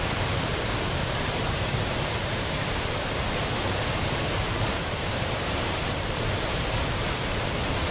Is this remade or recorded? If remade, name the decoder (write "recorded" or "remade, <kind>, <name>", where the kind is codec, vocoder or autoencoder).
remade, vocoder, BigVGAN v2